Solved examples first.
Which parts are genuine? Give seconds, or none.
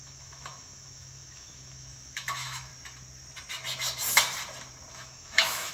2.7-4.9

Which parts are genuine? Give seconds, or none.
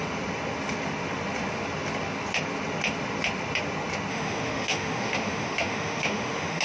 0.0-4.1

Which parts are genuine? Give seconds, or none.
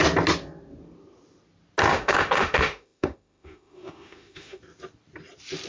0.0-1.9; 4.6-5.7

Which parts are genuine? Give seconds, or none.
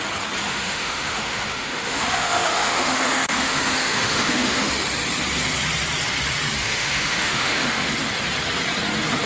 0.0-0.5; 4.7-6.6; 7.9-9.3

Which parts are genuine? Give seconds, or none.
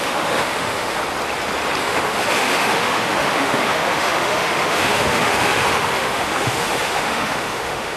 1.0-1.8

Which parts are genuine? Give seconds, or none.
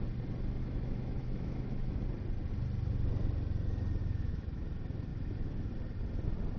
0.0-0.6; 2.0-4.0; 4.6-5.1; 5.7-6.6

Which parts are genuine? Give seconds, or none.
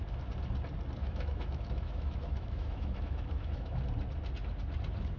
0.0-1.0; 3.8-5.2